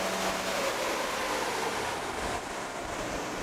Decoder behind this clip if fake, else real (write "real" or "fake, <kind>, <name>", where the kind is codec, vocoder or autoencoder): real